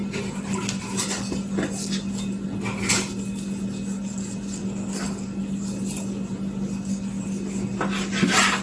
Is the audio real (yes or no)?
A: yes